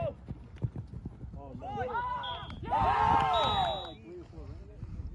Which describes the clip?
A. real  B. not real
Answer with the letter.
A